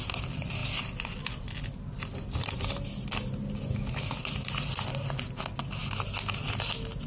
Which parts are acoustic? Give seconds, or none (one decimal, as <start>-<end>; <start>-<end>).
0.0-7.1